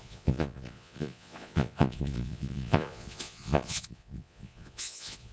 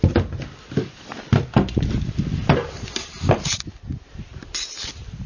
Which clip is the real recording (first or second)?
second